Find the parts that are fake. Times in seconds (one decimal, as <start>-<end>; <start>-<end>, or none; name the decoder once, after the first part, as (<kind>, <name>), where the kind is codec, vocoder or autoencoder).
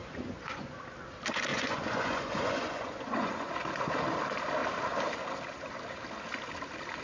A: 0.0-0.8 (vocoder, Vocos); 1.5-3.5